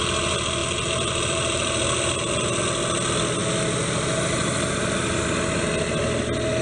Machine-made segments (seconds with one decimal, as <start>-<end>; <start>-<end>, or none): 0.6-2.6